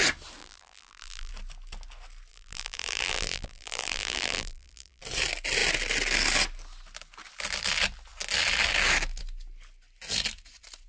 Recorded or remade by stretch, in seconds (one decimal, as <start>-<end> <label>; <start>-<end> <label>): 0.0-0.4 recorded; 0.4-1.3 remade; 1.3-2.3 recorded; 2.3-5.0 remade; 5.0-10.9 recorded